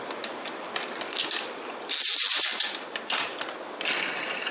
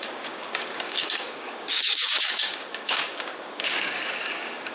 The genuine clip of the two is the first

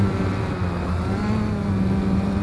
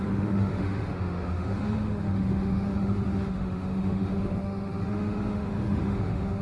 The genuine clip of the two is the first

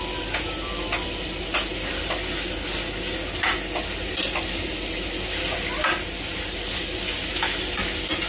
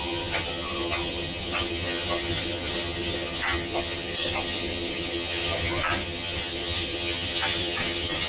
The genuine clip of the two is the first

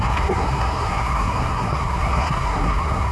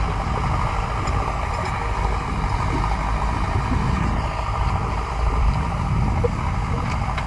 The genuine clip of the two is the second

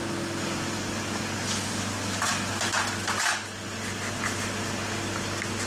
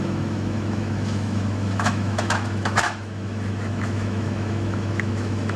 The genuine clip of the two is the first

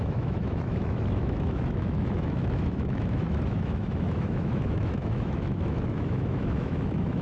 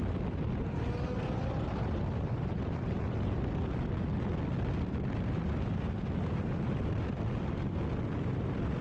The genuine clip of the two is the second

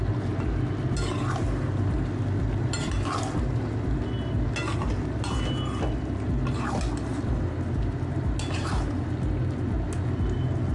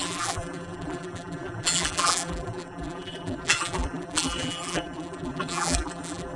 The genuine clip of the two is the first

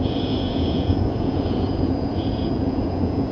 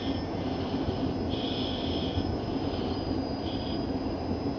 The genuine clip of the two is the second